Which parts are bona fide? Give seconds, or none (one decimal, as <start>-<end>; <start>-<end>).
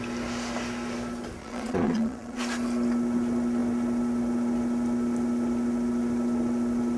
0.0-1.4; 2.4-7.0